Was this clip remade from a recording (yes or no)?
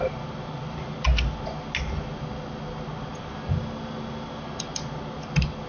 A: no